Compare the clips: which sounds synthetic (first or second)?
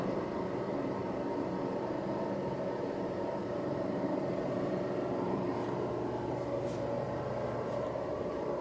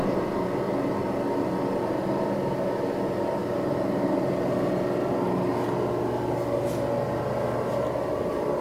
first